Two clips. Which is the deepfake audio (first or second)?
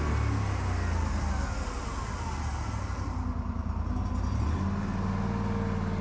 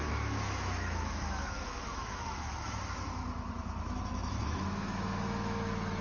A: second